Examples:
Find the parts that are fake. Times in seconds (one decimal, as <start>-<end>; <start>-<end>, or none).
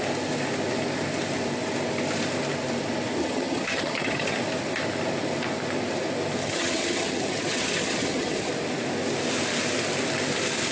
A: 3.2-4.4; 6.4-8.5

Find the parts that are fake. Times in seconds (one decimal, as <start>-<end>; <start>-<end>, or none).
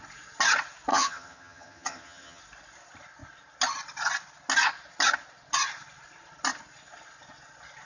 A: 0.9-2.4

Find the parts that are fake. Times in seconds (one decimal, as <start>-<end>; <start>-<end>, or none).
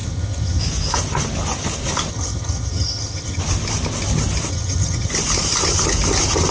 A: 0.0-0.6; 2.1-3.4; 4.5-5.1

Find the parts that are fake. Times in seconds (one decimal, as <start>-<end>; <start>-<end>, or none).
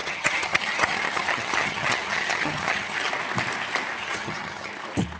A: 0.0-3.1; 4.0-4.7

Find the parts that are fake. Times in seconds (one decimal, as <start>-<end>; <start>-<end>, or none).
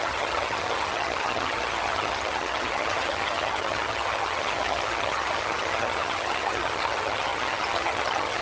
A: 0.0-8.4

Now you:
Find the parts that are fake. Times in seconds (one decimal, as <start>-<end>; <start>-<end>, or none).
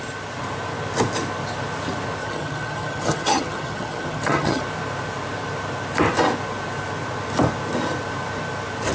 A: 2.2-4.6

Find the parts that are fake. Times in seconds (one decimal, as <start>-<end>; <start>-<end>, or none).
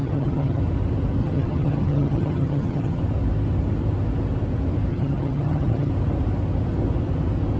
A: 0.0-0.6; 1.2-3.0; 4.9-5.9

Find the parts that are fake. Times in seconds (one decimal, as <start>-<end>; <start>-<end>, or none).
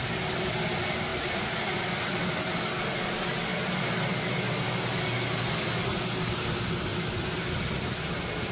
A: none